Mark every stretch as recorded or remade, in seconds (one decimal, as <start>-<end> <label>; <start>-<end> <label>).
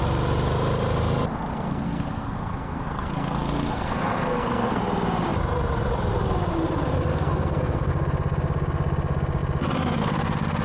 0.0-1.5 recorded; 1.5-4.8 remade; 4.8-7.1 recorded; 7.1-7.9 remade; 7.9-10.6 recorded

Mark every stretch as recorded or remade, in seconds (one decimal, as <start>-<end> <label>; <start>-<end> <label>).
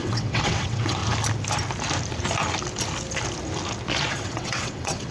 0.0-1.0 remade; 1.0-4.1 recorded; 4.1-5.1 remade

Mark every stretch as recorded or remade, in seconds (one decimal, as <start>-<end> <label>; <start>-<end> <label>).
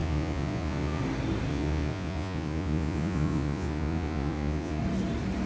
0.0-1.0 remade; 1.0-1.5 recorded; 1.5-4.8 remade; 4.8-5.5 recorded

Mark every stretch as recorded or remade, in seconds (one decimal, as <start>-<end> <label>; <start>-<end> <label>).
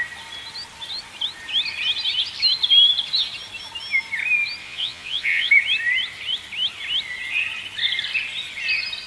0.0-4.6 recorded; 4.6-5.5 remade; 5.5-9.1 recorded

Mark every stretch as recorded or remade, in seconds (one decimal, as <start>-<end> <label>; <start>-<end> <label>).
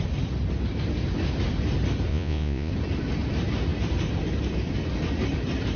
0.0-2.1 recorded; 2.1-2.7 remade; 2.7-5.8 recorded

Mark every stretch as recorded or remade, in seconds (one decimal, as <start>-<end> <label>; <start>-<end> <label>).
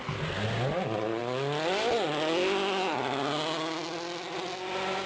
0.0-5.1 recorded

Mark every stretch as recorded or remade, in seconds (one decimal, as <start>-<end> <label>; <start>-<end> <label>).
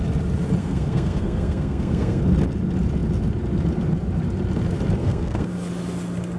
0.0-0.6 recorded; 0.6-2.2 remade; 2.2-5.0 recorded; 5.0-5.5 remade; 5.5-6.4 recorded